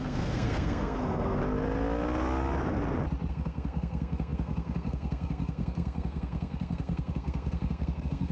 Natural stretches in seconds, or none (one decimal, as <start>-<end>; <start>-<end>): 1.4-3.3